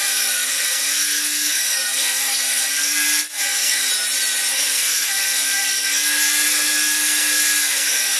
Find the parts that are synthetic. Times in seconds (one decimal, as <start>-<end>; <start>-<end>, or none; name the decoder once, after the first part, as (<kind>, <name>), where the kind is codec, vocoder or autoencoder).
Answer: 0.0-3.9 (codec, SNAC); 4.5-8.2

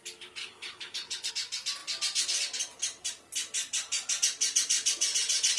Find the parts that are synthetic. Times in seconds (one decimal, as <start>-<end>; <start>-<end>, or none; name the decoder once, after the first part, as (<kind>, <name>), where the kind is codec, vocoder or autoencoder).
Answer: 0.4-1.3 (codec, HILCodec)